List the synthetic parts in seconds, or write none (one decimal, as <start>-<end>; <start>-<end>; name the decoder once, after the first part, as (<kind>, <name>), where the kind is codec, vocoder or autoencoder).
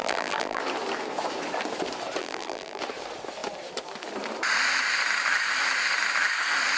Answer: 0.0-0.6 (vocoder, BigVGAN v2); 2.2-2.8